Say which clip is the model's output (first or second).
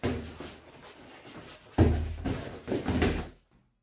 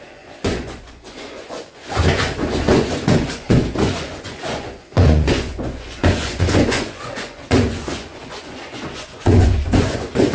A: second